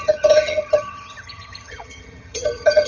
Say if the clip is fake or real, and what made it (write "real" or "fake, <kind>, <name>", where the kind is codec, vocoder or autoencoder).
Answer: fake, vocoder, HiFi-GAN